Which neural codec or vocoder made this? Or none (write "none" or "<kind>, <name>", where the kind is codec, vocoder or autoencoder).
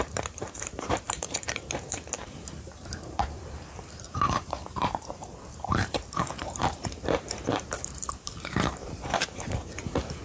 vocoder, BigVGAN v2